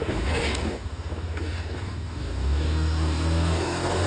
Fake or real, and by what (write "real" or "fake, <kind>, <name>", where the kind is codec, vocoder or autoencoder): fake, codec, DAC